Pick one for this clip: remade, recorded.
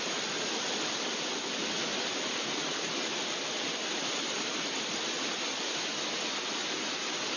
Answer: recorded